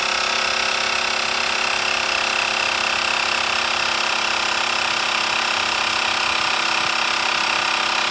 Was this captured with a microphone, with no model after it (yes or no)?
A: yes